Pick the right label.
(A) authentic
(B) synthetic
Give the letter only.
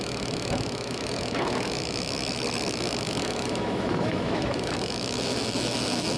B